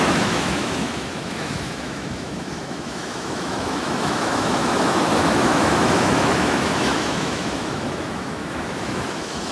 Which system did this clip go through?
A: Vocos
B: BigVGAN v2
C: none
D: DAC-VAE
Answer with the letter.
D